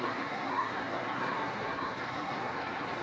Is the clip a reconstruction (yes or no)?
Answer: yes